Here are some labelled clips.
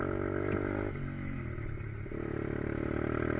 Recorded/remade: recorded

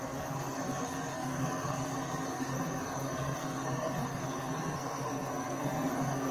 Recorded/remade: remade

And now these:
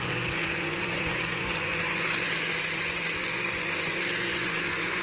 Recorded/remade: remade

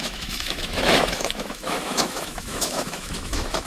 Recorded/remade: remade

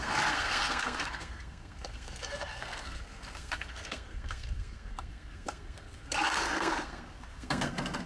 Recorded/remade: remade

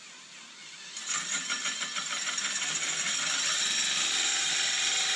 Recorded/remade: recorded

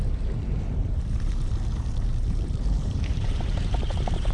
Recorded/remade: remade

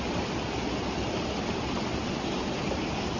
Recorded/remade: recorded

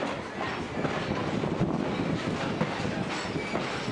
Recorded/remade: recorded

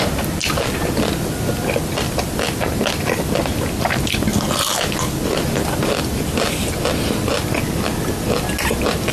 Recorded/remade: recorded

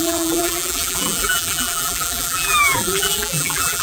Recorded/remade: remade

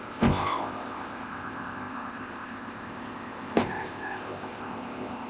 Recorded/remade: remade